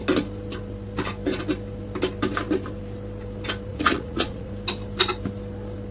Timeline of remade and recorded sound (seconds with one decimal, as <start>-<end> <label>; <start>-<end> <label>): 0.0-3.7 recorded; 3.7-4.5 remade; 4.5-5.9 recorded